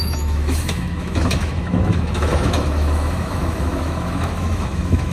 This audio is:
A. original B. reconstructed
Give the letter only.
B